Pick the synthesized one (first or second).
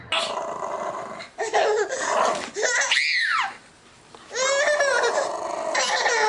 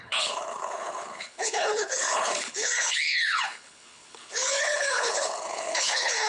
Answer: second